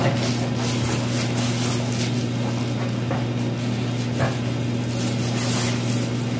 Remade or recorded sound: recorded